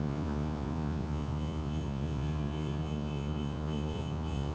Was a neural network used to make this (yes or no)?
yes